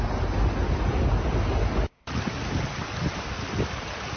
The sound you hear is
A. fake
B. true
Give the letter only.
B